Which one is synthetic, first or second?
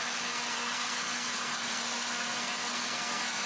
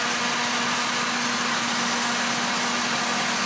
first